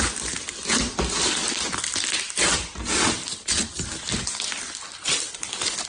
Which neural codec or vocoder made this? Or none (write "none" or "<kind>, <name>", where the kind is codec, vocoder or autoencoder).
none